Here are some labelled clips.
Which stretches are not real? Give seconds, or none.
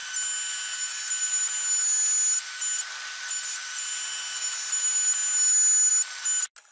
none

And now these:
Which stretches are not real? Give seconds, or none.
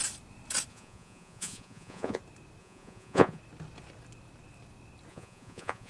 0.7-2.2 (vocoder, Vocos); 2.6-3.4; 5.1-5.9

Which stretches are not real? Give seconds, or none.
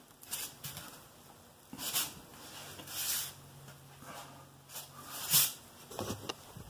none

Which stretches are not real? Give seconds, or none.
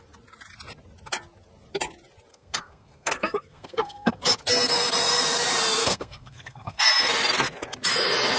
2.3-4.2 (codec, SNAC); 5.8-6.9